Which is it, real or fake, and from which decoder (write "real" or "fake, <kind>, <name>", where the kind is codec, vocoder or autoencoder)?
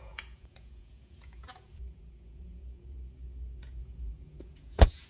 fake, vocoder, Vocos